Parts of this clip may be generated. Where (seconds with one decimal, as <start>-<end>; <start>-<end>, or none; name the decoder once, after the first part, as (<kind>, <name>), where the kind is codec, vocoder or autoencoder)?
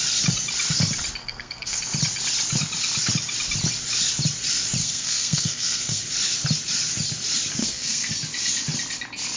1.2-1.8 (codec, SNAC); 4.8-6.0; 7.6-8.1